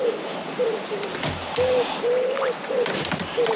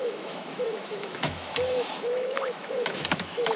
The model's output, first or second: second